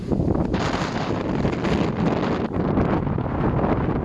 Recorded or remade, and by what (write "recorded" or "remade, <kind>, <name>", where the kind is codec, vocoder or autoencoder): recorded